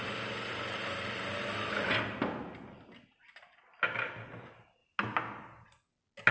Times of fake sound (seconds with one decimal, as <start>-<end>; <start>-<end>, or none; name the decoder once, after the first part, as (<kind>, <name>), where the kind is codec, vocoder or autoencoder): none